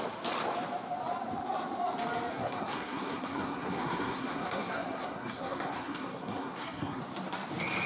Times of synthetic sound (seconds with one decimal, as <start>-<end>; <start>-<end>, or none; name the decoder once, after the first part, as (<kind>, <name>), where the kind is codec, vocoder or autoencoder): 2.3-7.0 (codec, SNAC)